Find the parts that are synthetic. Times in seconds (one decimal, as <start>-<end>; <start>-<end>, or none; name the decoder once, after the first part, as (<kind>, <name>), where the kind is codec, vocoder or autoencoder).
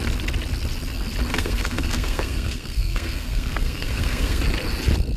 1.3-4.4 (codec, SNAC)